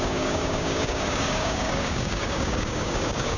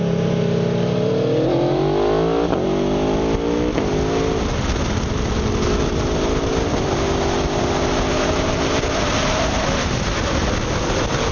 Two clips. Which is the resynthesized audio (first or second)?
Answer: first